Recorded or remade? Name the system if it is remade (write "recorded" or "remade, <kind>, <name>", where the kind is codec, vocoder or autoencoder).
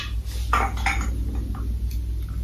recorded